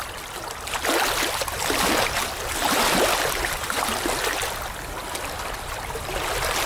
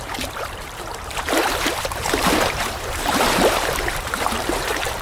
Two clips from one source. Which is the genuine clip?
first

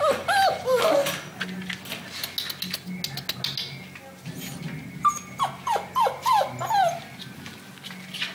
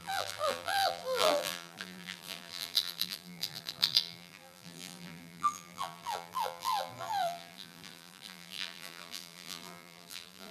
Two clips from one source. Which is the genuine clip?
first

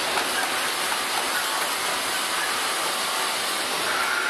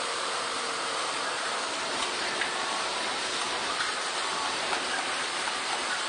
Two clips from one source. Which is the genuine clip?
first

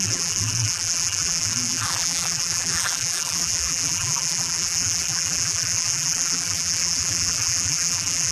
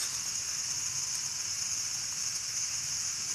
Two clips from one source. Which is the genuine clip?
second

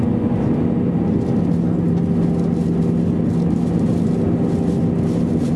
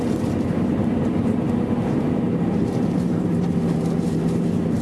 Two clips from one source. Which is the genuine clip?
first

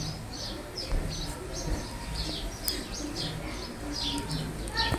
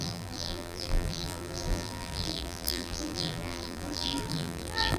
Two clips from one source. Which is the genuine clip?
first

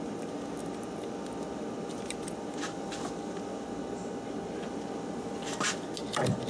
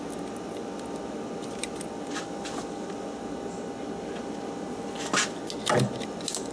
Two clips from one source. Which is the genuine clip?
second